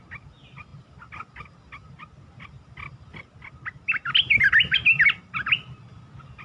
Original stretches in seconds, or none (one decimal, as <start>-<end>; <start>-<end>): 0.0-6.4